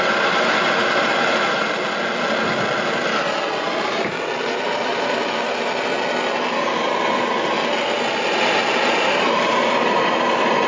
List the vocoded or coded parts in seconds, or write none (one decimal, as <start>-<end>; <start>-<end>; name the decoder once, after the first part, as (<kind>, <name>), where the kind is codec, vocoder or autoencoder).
none